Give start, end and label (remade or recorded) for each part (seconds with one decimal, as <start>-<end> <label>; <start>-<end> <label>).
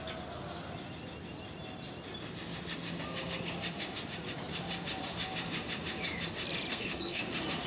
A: 0.0-6.7 recorded; 6.7-7.2 remade; 7.2-7.7 recorded